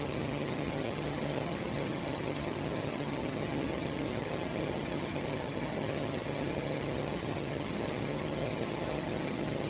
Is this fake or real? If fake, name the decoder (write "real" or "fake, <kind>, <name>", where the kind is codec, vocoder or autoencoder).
fake, vocoder, HiFi-GAN